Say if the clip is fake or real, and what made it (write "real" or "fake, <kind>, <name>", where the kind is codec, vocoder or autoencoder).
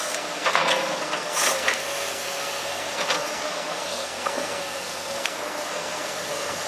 fake, codec, SNAC